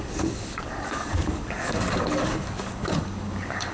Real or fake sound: fake